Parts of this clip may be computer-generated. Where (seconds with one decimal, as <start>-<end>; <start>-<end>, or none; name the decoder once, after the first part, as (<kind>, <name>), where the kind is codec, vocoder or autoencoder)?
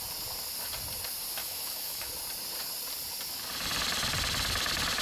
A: 1.4-2.1 (autoencoder, DAC-VAE)